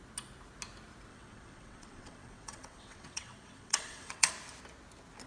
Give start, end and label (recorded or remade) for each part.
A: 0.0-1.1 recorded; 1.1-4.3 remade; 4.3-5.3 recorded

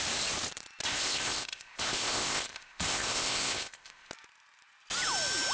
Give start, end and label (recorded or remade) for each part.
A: 0.0-0.8 recorded; 0.8-4.1 remade; 4.1-5.5 recorded

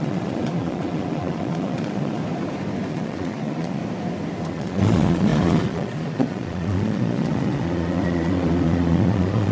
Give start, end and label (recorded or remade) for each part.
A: 0.0-2.2 remade; 2.2-2.9 recorded; 2.9-3.8 remade; 3.8-4.5 recorded; 4.5-9.5 remade

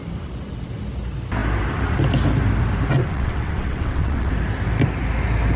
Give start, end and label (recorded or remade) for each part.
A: 0.0-3.0 recorded; 3.0-4.3 remade; 4.3-5.6 recorded

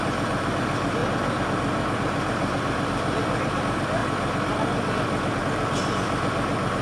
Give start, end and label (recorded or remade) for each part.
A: 0.0-6.8 recorded